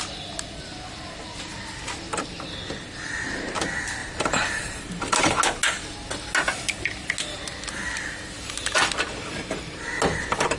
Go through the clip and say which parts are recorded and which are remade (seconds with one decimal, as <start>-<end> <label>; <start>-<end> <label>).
0.0-4.0 recorded; 4.0-5.4 remade; 5.4-10.6 recorded